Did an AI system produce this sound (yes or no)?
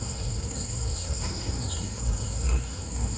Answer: yes